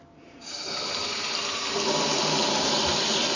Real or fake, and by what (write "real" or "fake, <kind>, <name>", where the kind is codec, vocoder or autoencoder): real